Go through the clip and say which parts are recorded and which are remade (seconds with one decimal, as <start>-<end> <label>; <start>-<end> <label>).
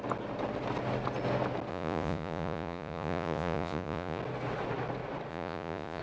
0.0-1.7 recorded; 1.7-4.2 remade; 4.2-5.3 recorded; 5.3-6.0 remade